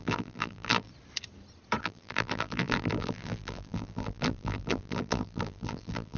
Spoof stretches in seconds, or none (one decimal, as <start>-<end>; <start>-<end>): 0.0-0.9; 1.8-6.2

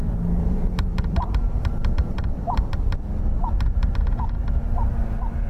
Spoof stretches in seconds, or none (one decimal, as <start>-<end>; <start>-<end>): 0.4-2.7

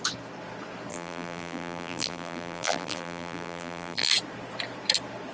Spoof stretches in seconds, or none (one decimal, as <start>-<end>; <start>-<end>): 0.9-4.1